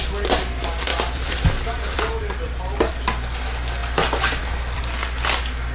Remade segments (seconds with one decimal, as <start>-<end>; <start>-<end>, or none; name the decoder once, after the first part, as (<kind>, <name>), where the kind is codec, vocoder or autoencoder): 0.9-2.9 (vocoder, BigVGAN v2); 3.8-4.8